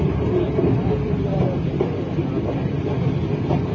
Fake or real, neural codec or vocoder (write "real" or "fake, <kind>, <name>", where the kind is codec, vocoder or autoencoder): real